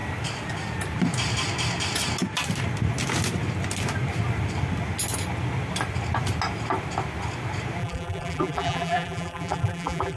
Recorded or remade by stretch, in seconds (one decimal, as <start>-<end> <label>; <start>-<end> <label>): 0.0-7.8 recorded; 7.8-10.2 remade